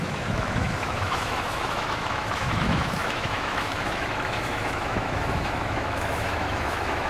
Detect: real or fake fake